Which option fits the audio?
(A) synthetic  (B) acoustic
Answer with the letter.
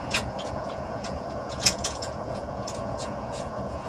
A